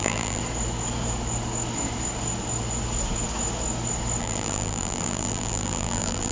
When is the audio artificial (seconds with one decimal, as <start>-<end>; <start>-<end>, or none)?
0.0-0.4; 4.2-6.3